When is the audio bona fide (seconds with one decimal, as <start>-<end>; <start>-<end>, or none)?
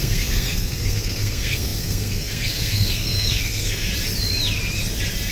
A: 3.9-5.3